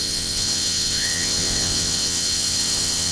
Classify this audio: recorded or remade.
remade